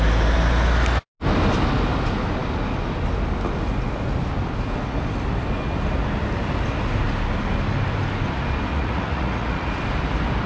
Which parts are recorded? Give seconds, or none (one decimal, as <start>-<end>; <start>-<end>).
0.0-8.7; 9.7-10.5